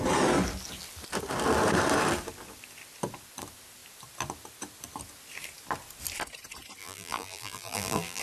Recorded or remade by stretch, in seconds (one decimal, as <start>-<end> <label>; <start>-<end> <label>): 0.0-6.8 recorded; 6.8-8.2 remade